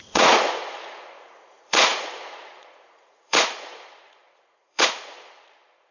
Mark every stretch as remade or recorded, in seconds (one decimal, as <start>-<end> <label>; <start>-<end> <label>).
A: 0.0-5.9 remade